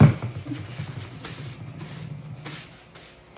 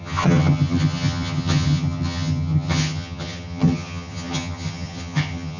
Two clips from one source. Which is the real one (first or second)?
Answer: first